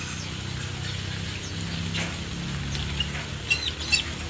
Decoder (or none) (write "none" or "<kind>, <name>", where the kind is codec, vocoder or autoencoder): none